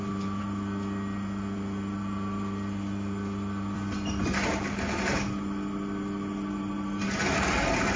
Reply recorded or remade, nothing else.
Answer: recorded